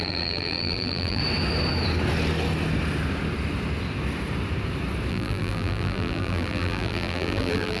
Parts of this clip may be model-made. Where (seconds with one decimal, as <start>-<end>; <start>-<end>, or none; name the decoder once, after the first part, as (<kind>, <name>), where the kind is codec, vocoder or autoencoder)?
0.0-1.2 (vocoder, BigVGAN v2); 5.1-7.8